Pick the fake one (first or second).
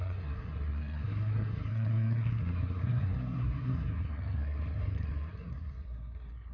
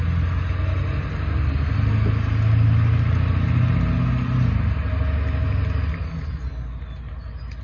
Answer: first